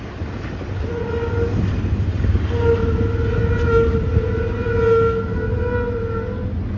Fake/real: real